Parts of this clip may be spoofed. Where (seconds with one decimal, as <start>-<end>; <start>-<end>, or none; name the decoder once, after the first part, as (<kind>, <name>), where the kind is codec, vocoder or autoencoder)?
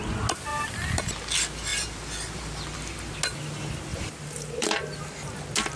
0.5-1.0 (vocoder, BigVGAN v2); 1.7-3.2; 3.9-4.8